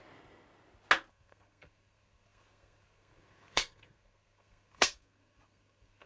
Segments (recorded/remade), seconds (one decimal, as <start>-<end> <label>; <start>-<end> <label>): 0.0-1.1 recorded; 1.1-6.1 remade